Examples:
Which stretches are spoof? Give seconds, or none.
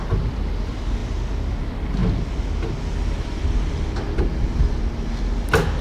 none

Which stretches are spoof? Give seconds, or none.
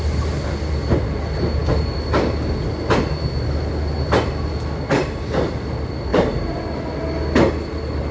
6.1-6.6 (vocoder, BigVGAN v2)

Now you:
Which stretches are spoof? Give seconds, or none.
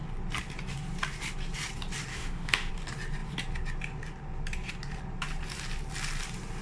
2.1-2.7 (autoencoder, DAC-VAE)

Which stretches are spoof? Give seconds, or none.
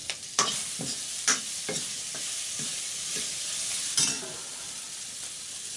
0.0-5.8 (vocoder, BigVGAN v2)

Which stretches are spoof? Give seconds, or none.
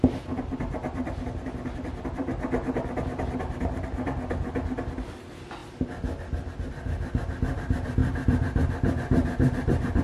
none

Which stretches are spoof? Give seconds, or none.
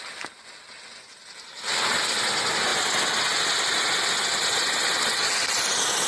none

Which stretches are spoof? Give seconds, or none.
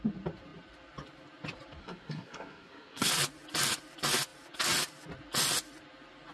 1.8-3.1 (codec, SNAC)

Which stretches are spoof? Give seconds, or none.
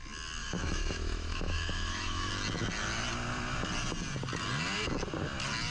0.4-2.3 (autoencoder, DAC-VAE)